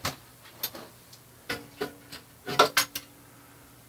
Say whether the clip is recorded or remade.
recorded